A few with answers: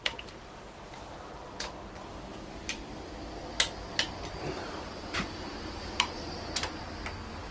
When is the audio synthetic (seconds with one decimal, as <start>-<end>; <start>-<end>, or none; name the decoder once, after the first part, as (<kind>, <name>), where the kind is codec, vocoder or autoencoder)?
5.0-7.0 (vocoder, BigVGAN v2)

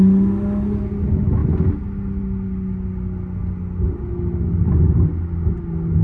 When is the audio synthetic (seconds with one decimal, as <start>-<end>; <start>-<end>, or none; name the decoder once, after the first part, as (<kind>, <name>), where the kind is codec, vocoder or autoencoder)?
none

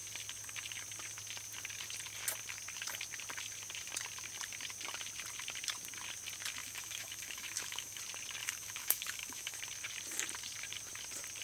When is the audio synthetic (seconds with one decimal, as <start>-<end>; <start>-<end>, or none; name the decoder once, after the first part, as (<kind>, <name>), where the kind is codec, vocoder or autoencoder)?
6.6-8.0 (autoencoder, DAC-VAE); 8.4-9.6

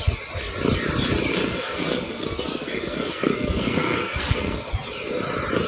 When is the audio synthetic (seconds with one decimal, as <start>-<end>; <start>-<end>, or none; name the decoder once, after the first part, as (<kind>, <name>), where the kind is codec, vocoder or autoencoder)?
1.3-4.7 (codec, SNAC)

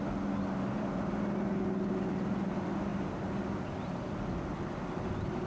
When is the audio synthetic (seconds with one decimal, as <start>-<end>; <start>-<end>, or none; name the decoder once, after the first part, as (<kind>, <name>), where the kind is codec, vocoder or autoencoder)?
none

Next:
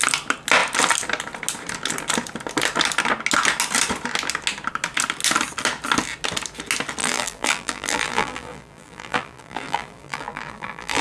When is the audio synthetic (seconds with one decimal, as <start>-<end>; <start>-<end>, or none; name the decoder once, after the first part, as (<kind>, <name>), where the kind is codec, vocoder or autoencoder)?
7.0-11.0 (vocoder, BigVGAN v2)